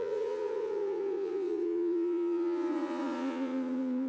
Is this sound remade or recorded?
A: remade